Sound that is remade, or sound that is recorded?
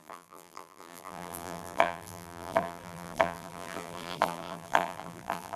remade